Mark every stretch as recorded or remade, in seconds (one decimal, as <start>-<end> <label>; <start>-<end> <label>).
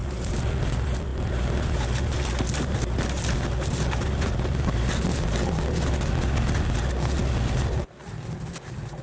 0.0-9.0 recorded